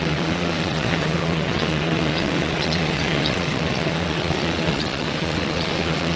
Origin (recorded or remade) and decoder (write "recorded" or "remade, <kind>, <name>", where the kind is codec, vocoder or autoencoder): remade, vocoder, WaveNeXt